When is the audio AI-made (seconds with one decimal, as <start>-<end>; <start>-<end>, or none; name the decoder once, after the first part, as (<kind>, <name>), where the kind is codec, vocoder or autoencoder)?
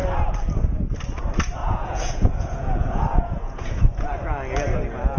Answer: 1.6-3.8 (vocoder, Vocos)